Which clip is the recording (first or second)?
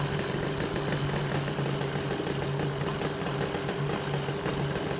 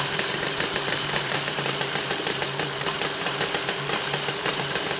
first